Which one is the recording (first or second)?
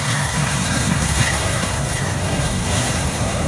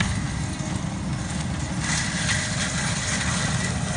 second